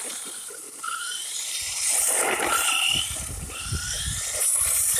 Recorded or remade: remade